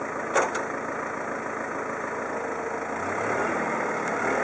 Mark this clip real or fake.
real